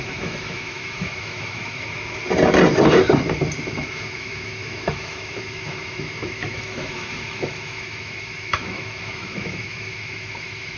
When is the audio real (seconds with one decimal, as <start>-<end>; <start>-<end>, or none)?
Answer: 2.2-3.6